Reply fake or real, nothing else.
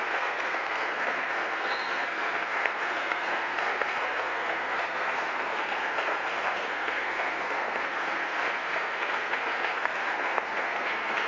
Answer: fake